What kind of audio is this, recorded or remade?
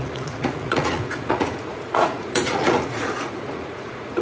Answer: remade